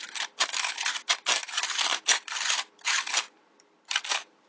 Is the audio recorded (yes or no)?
yes